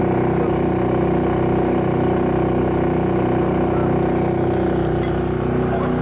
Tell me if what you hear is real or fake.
real